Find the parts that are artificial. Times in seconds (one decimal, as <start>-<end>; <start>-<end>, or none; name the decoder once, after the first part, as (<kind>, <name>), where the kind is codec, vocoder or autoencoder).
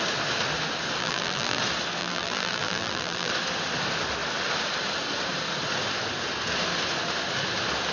1.0-1.6 (vocoder, BigVGAN v2); 2.0-3.3